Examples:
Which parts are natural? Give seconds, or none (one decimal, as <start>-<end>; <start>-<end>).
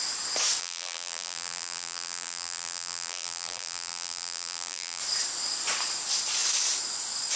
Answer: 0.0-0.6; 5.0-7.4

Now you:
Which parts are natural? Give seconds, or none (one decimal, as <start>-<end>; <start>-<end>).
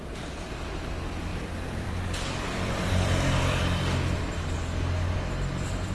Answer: 0.0-1.3; 4.2-5.9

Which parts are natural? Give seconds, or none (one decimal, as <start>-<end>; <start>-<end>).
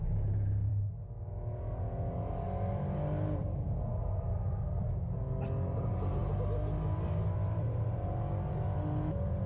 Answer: 0.0-9.5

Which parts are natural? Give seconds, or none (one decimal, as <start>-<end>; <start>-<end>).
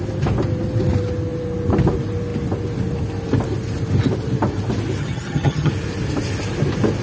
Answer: 0.0-5.0; 5.7-7.0